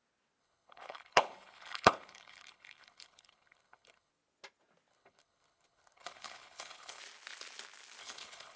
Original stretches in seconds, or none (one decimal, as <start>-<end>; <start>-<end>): 0.0-0.4; 4.1-4.9; 7.0-8.0